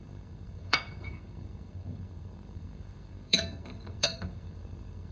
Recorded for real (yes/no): no